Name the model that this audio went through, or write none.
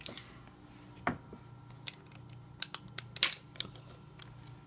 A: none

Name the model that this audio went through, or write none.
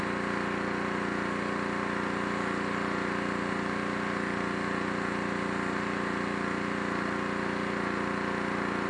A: none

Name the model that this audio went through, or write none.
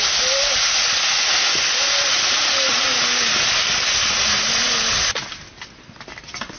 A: none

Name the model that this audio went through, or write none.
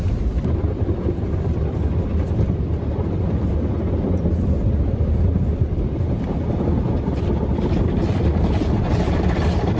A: vocoder, BigVGAN v2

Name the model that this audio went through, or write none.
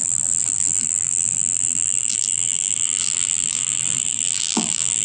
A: vocoder, BigVGAN v2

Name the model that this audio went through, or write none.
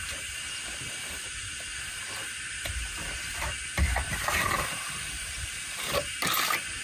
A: none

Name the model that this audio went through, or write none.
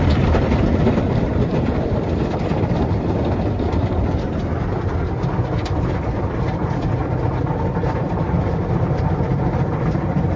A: vocoder, BigVGAN v2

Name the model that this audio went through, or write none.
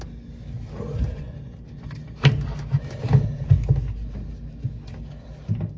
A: none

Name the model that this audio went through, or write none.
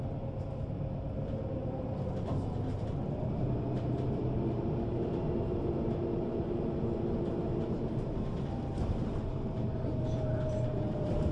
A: vocoder, BigVGAN v2